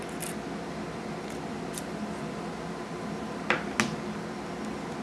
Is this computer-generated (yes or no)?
no